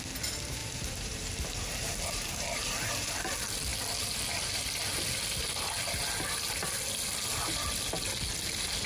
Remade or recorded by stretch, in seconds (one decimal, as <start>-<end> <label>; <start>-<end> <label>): 0.0-0.6 recorded; 0.6-3.2 remade; 3.2-8.9 recorded